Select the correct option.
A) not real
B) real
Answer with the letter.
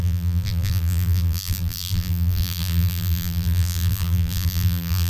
A